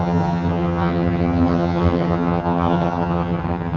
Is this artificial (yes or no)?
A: yes